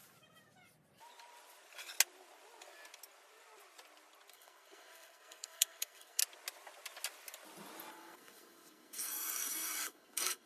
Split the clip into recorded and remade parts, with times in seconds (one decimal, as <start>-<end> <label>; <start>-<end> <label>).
0.0-4.3 recorded; 4.3-6.2 remade; 6.2-7.9 recorded; 7.9-10.5 remade